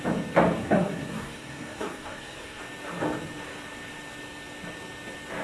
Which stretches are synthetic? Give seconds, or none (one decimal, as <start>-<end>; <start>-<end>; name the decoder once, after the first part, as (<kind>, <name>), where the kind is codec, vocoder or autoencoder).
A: 0.6-2.6 (codec, SNAC)